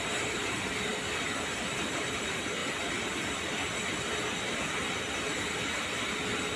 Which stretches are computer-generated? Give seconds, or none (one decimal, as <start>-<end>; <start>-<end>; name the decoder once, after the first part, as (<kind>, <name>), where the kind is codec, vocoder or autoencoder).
0.0-0.9 (vocoder, BigVGAN v2); 1.7-2.6